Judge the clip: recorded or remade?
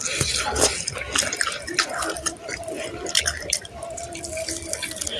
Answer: recorded